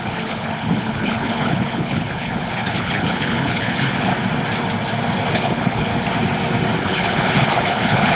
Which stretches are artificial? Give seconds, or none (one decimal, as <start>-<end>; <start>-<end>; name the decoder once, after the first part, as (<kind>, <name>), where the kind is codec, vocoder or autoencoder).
0.0-4.1 (codec, HILCodec); 5.3-5.9; 6.8-8.1